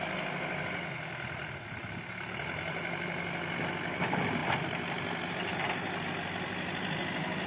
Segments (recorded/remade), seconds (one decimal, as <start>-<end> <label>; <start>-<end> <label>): 0.0-7.5 recorded